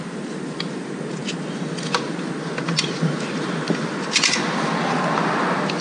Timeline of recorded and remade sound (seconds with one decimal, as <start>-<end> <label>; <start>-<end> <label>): 0.0-5.8 recorded